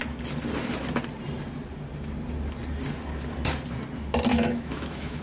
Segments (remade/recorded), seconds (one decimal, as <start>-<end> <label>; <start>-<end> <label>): 0.0-4.3 recorded; 4.3-5.2 remade